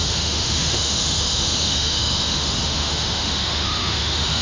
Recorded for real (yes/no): no